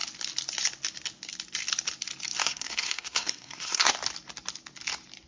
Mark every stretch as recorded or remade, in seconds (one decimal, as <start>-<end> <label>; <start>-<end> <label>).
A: 0.0-2.4 recorded; 2.4-3.9 remade; 3.9-5.3 recorded